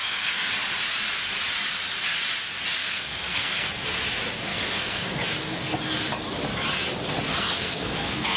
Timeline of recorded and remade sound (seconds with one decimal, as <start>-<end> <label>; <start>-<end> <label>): 0.0-0.5 remade; 0.5-2.8 recorded; 2.8-3.7 remade; 3.7-4.5 recorded; 4.5-5.2 remade; 5.2-7.3 recorded; 7.3-8.4 remade